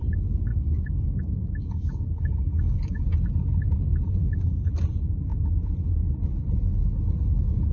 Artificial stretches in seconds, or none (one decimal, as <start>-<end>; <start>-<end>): 0.5-3.1; 4.2-4.7